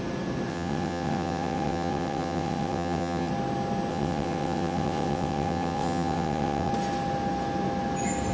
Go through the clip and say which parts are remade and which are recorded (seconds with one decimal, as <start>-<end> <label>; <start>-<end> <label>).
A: 0.0-0.5 recorded; 0.5-3.3 remade; 3.3-3.9 recorded; 3.9-6.7 remade; 6.7-8.3 recorded